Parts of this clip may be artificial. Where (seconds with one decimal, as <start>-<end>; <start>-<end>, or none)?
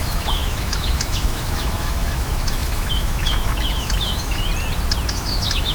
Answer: 0.0-4.5; 5.1-5.7